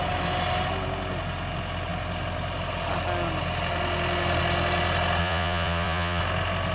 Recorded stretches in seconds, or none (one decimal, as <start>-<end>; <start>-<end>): 0.0-5.2; 6.2-6.7